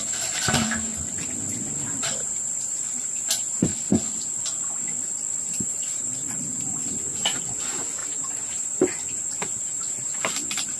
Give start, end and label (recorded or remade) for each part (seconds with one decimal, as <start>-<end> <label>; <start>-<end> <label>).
0.0-0.9 remade; 0.9-1.9 recorded; 1.9-3.7 remade; 3.7-5.4 recorded; 5.4-10.8 remade